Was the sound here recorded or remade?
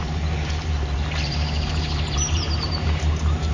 remade